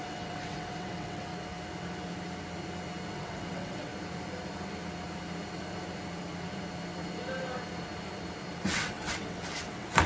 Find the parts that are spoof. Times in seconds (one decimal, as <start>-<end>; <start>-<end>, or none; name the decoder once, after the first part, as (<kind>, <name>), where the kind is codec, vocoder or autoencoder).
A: 0.0-1.3 (vocoder, WaveNeXt); 3.1-3.9; 8.6-10.1